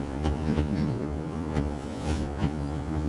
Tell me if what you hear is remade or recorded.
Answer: remade